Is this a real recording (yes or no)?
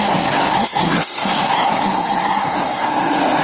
no